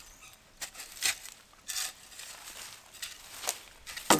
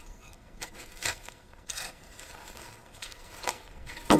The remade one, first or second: second